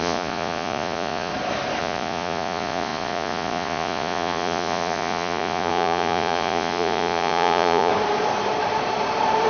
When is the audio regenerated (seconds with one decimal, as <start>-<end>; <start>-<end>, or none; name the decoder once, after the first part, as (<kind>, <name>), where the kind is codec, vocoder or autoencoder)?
0.0-1.3 (vocoder, Vocos); 1.8-7.9